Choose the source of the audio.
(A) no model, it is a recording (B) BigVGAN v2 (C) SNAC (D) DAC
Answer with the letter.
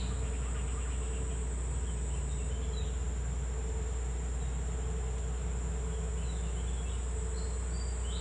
A